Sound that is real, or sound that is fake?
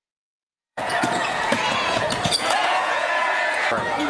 fake